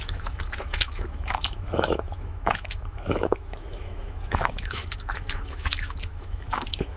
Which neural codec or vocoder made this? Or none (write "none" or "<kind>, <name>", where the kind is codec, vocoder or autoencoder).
autoencoder, DAC-VAE